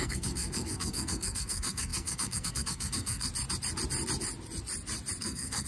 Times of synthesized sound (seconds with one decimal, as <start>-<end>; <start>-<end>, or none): 0.0-3.3; 5.2-5.7